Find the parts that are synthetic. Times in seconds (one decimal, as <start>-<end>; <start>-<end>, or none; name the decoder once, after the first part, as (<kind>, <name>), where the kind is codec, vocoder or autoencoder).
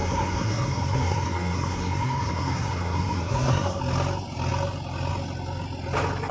0.0-3.8 (codec, SNAC)